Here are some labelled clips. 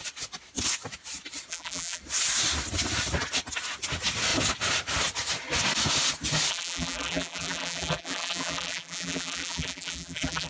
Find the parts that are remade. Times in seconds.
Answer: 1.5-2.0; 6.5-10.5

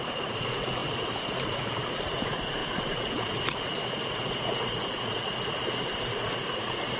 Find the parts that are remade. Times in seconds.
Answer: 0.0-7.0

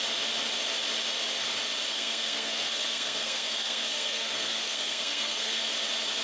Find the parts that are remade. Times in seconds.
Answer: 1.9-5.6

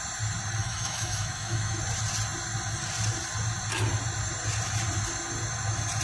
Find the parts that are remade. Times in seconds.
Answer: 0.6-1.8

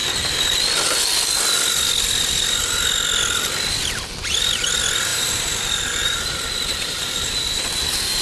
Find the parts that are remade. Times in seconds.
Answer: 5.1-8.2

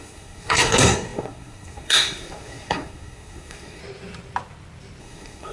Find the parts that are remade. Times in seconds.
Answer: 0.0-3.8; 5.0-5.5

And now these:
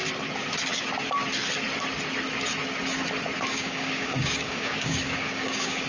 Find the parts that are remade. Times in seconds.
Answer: 3.5-5.9